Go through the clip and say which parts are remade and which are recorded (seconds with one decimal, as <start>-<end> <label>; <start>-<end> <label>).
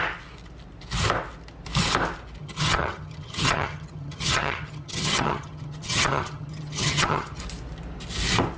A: 0.0-2.4 recorded; 2.4-7.4 remade; 7.4-8.6 recorded